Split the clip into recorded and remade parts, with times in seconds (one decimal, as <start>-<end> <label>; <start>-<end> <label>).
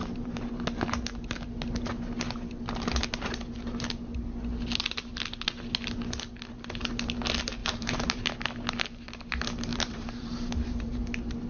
0.0-0.5 remade; 0.5-7.6 recorded; 7.6-8.3 remade; 8.3-9.7 recorded; 9.7-11.0 remade; 11.0-11.5 recorded